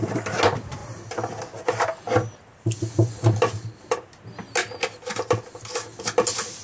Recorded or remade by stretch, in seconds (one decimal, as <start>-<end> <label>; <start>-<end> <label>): 0.0-6.6 recorded